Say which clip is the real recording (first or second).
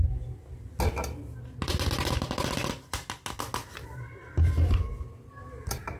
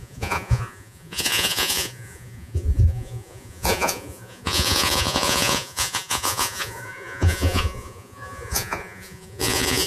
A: first